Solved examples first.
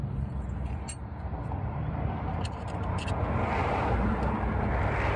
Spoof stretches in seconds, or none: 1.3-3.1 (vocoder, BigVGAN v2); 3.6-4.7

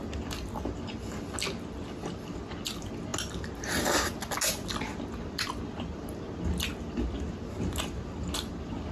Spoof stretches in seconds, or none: none

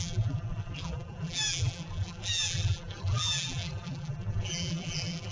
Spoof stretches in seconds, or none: 0.0-5.3 (vocoder, BigVGAN v2)

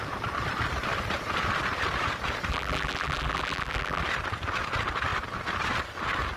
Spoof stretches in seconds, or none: 2.5-4.0 (vocoder, BigVGAN v2)

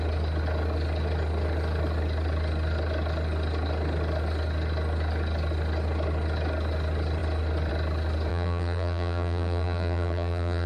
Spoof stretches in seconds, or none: 8.3-10.7 (vocoder, BigVGAN v2)

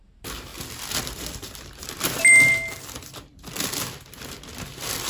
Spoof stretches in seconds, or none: 0.0-0.5 (vocoder, BigVGAN v2); 1.0-3.3

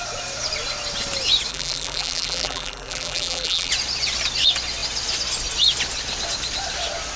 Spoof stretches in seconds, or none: 1.5-3.7 (vocoder, BigVGAN v2)